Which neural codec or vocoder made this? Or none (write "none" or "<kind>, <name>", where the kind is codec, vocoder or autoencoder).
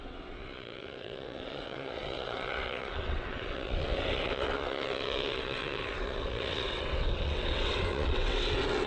vocoder, WaveNeXt